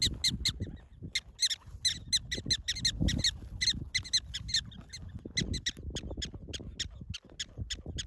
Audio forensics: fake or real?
real